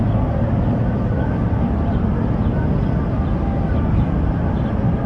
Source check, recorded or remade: recorded